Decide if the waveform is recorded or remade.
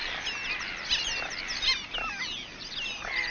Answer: recorded